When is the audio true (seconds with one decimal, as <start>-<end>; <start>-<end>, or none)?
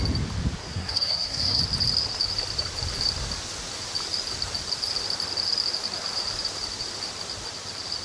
0.0-0.6; 1.6-8.0